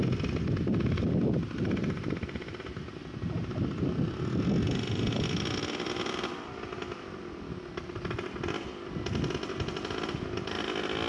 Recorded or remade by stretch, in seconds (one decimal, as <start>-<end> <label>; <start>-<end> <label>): 0.0-1.8 recorded; 1.8-2.6 remade; 2.6-11.1 recorded